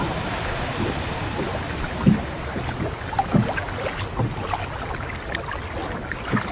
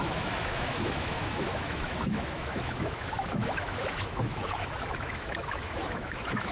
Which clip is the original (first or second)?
first